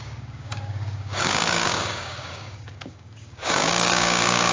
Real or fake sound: fake